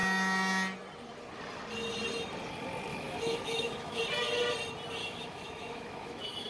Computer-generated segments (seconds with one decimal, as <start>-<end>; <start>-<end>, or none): 2.9-4.0; 5.0-6.5